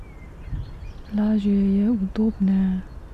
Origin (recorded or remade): recorded